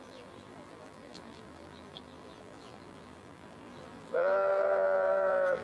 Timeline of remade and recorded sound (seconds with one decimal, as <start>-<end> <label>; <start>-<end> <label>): 0.0-5.6 remade